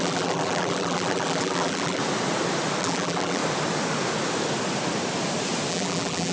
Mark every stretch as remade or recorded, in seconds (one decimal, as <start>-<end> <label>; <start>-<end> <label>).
0.0-2.0 remade; 2.0-2.8 recorded; 2.8-3.4 remade; 3.4-5.7 recorded; 5.7-6.3 remade